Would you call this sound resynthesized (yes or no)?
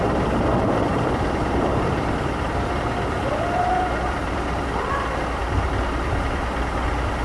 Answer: yes